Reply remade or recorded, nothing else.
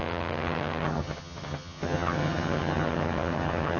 remade